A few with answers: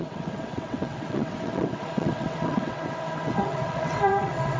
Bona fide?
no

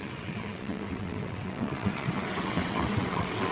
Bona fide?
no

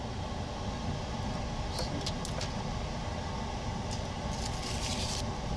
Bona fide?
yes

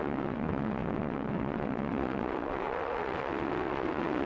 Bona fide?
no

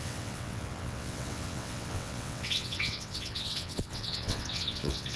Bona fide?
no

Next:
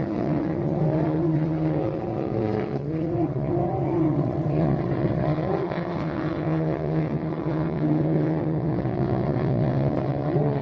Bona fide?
no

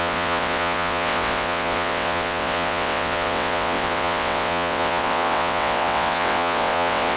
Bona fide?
no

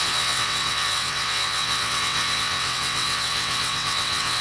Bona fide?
no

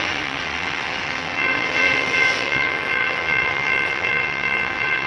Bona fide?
no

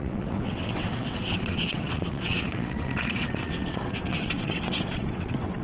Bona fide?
no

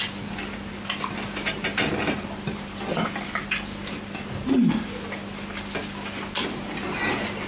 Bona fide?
yes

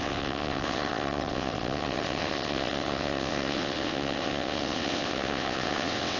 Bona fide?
no